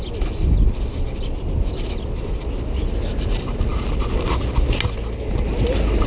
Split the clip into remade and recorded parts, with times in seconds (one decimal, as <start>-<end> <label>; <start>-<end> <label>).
0.0-6.1 recorded